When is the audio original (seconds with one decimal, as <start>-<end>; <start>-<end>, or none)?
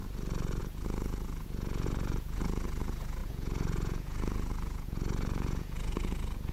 0.0-0.6